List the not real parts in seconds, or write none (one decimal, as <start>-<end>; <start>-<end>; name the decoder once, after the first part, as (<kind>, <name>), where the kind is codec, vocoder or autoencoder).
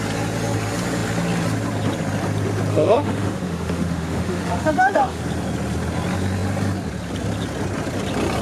2.7-5.2 (autoencoder, DAC-VAE)